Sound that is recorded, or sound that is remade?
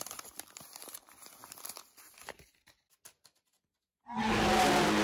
recorded